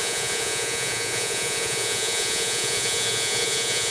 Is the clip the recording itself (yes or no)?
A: no